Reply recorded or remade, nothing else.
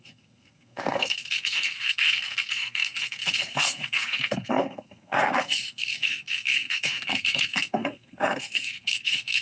remade